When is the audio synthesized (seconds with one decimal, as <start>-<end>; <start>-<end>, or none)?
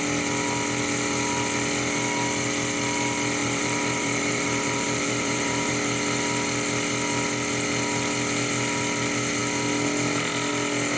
3.4-5.7